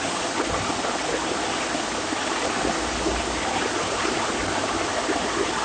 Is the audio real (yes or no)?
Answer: yes